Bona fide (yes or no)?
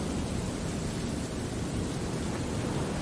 yes